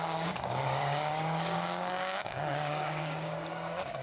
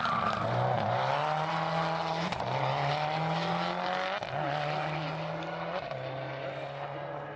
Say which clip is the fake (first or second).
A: first